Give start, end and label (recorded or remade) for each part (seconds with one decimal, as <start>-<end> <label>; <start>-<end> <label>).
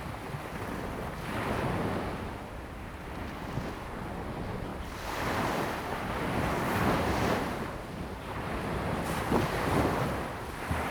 0.0-4.7 recorded; 4.7-8.5 remade; 8.5-10.9 recorded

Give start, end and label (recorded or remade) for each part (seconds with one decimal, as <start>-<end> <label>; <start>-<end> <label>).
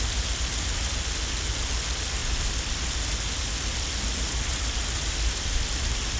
0.0-2.2 recorded; 2.2-5.5 remade; 5.5-6.2 recorded